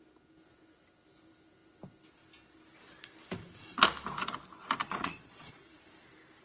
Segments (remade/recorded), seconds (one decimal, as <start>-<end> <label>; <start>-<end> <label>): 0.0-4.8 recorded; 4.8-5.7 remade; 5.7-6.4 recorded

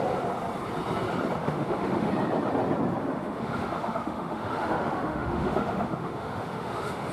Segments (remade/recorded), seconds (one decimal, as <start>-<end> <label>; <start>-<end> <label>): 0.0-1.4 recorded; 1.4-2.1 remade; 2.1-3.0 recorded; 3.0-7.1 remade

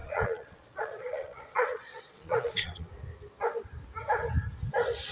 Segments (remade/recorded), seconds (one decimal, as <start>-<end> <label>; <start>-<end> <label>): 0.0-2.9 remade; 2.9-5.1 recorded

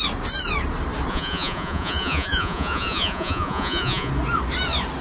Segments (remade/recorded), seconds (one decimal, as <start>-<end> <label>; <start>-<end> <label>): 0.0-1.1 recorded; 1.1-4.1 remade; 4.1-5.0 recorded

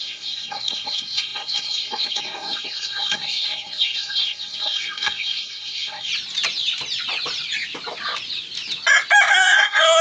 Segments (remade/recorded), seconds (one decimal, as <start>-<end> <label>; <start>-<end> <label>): 0.0-6.1 remade; 6.1-9.3 recorded; 9.3-10.0 remade

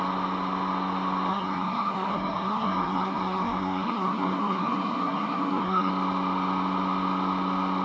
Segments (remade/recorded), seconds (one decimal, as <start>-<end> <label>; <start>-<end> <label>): 0.0-1.3 recorded; 1.3-5.9 remade; 5.9-7.8 recorded

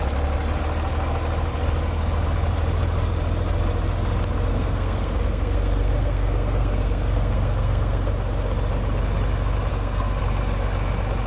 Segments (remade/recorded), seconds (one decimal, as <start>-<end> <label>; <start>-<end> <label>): 0.0-4.5 recorded; 4.5-8.1 remade; 8.1-9.7 recorded; 9.7-10.2 remade; 10.2-11.3 recorded

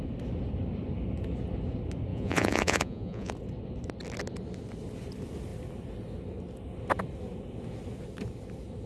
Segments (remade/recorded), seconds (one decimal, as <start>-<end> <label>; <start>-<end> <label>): 0.0-2.1 recorded; 2.1-3.3 remade; 3.3-8.9 recorded